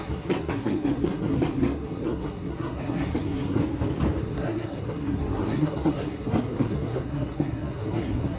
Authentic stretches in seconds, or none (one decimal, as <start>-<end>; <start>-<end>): 3.6-4.2